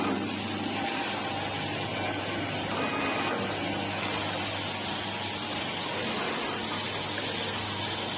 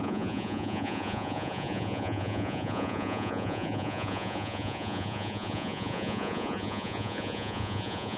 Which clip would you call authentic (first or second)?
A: first